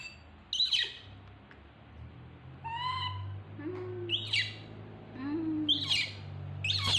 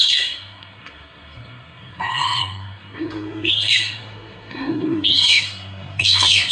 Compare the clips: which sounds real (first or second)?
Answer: first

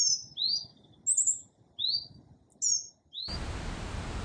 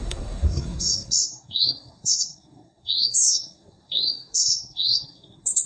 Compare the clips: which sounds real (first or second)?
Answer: first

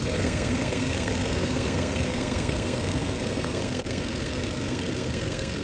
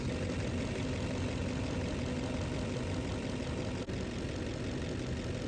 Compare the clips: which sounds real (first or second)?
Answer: second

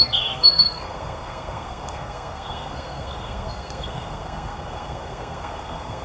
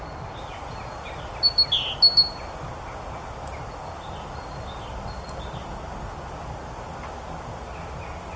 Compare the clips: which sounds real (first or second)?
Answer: second